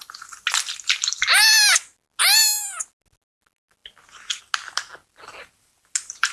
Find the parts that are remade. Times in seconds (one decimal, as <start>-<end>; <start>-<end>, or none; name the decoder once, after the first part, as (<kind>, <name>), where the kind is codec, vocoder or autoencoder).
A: none